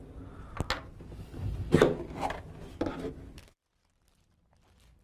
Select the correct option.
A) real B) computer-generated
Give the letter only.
A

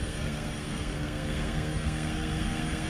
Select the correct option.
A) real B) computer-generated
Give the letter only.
B